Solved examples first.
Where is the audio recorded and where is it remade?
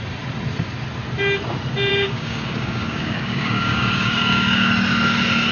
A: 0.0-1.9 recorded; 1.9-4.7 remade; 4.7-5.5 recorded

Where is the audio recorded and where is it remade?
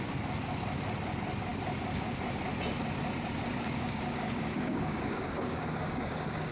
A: 0.0-3.5 recorded; 3.5-6.5 remade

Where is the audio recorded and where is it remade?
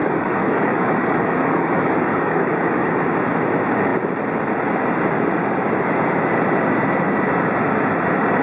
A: 0.0-2.9 remade; 2.9-8.4 recorded